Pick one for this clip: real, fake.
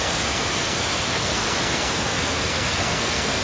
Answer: fake